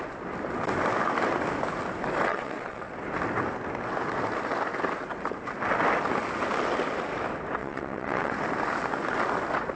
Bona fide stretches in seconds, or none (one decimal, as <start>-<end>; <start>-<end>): 0.0-2.3; 2.9-7.6; 8.3-9.8